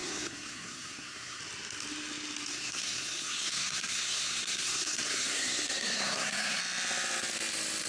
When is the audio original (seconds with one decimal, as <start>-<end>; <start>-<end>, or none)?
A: 1.4-2.5; 6.6-7.9